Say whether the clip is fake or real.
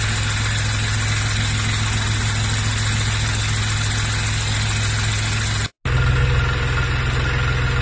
real